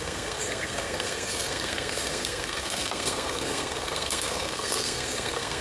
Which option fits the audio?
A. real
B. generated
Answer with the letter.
B